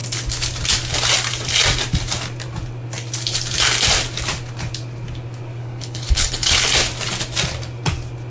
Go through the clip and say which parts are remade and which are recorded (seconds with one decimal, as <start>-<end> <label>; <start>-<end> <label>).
0.0-5.6 recorded; 5.6-6.6 remade; 6.6-8.3 recorded